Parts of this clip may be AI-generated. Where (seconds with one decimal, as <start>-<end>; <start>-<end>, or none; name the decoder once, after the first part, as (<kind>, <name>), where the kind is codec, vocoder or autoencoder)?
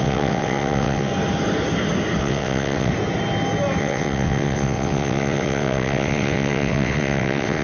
0.0-1.1 (vocoder, WaveNeXt); 2.2-2.9; 3.8-7.6